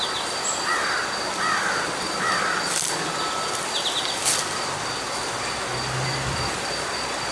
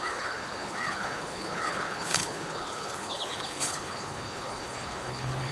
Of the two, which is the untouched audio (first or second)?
first